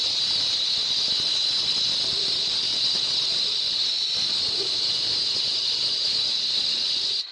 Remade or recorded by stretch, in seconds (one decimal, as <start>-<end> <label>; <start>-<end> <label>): 0.0-7.3 recorded